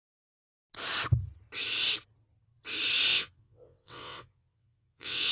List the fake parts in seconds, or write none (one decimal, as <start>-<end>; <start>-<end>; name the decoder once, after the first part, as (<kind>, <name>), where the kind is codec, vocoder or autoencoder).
3.1-5.3 (vocoder, WaveNeXt)